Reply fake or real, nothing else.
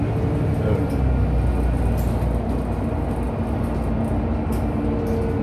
real